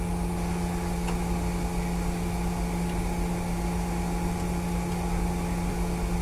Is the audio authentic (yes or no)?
yes